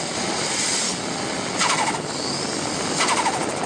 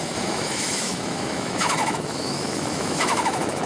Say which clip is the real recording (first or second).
first